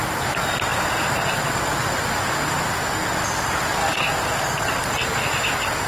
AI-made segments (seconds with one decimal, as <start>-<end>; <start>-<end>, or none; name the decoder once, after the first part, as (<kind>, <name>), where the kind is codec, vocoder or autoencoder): 0.7-2.1 (vocoder, BigVGAN v2); 3.8-4.8